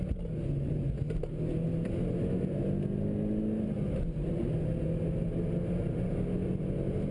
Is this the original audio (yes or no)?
yes